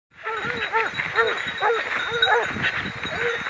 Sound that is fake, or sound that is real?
real